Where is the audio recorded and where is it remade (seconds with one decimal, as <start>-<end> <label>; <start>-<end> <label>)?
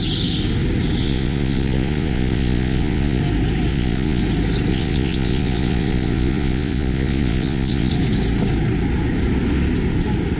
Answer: 0.0-1.0 recorded; 1.0-3.2 remade; 3.2-3.7 recorded; 3.7-4.2 remade; 4.2-4.7 recorded; 4.7-7.9 remade; 7.9-10.4 recorded